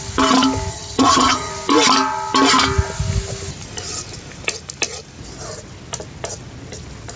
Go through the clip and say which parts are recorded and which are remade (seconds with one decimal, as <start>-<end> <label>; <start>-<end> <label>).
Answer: 0.0-0.7 recorded; 0.7-1.5 remade; 1.5-7.2 recorded